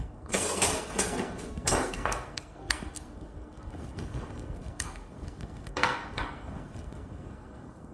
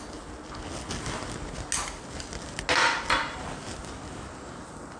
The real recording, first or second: second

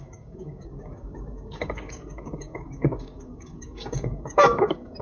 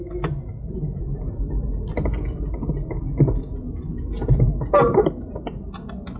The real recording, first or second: second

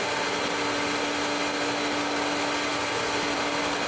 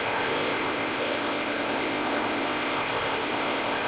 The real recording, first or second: first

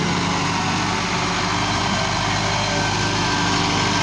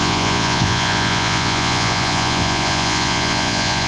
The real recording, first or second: first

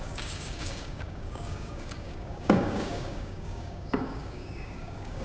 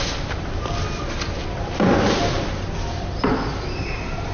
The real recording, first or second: second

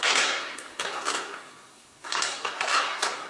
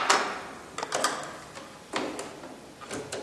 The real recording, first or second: second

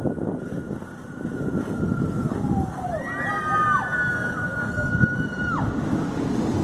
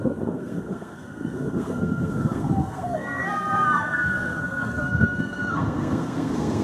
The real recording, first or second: first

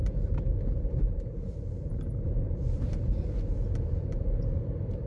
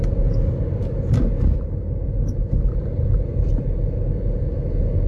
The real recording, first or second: second